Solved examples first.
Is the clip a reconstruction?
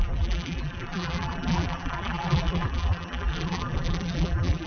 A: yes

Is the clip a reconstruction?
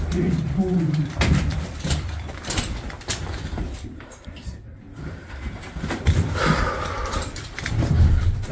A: yes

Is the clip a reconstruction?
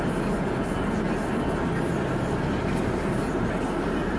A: no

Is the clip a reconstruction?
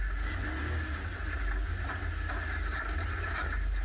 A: no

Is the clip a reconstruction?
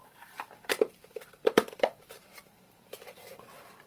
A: yes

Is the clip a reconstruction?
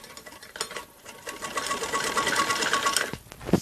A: no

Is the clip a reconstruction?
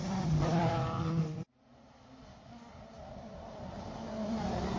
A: yes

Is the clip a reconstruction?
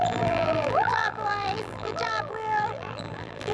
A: yes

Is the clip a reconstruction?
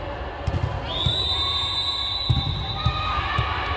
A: no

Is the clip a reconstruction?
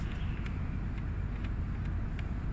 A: yes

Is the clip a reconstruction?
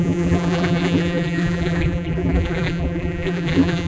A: yes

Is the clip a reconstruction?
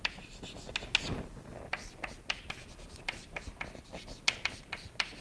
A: no